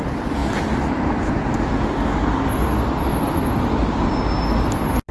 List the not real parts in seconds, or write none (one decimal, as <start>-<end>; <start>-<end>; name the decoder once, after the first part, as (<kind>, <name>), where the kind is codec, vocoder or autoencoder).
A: 0.4-1.3 (vocoder, BigVGAN v2); 3.1-3.7